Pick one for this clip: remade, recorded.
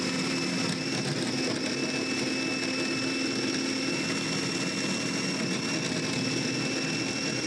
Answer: recorded